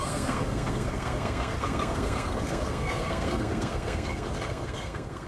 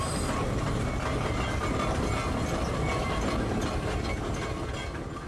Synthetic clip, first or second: first